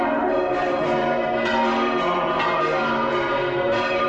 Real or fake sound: fake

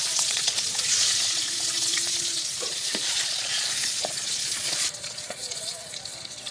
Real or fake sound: fake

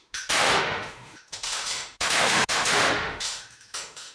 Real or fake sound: fake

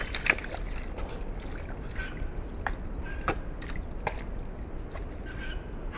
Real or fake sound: real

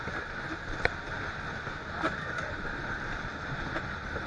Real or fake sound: real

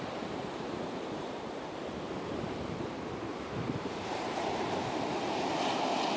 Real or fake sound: fake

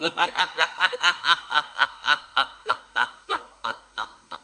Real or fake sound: fake